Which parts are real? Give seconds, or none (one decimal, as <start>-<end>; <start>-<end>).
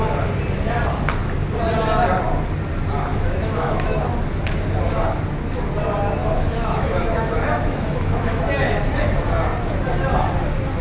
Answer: 0.0-3.1; 4.0-6.2; 8.4-10.8